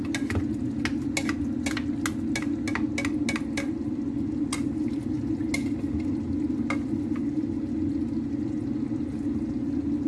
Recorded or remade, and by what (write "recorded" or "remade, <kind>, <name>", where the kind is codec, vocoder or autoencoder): recorded